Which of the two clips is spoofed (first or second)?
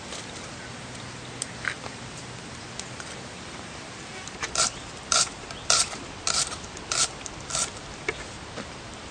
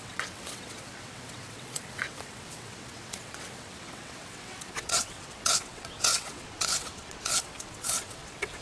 second